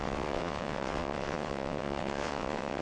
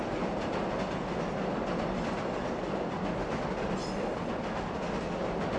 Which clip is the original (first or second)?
second